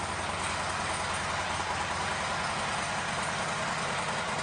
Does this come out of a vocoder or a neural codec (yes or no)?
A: no